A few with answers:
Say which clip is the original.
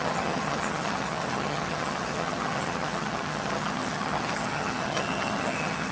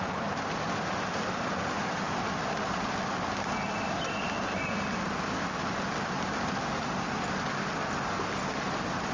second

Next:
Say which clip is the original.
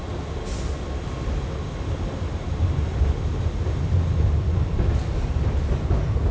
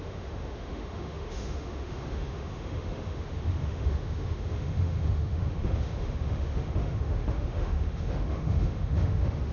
first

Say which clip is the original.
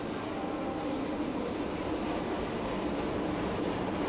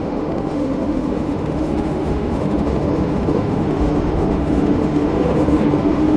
first